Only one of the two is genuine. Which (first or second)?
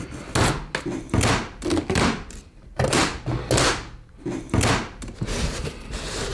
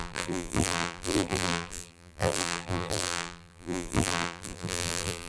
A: first